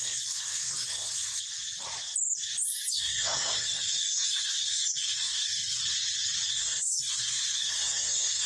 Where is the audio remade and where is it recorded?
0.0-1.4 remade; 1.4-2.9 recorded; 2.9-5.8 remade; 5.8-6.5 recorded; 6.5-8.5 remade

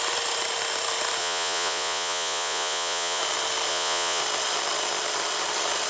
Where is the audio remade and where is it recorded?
0.0-1.2 recorded; 1.2-3.2 remade; 3.2-3.7 recorded; 3.7-4.2 remade; 4.2-5.9 recorded